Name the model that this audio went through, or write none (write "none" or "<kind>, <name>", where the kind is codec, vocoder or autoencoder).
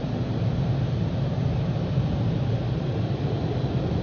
none